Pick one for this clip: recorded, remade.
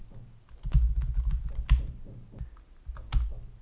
recorded